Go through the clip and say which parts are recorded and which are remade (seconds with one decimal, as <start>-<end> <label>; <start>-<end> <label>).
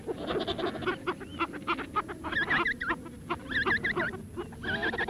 0.0-5.1 recorded